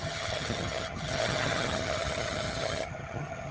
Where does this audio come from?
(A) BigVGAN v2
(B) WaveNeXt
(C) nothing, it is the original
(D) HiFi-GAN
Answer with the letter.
D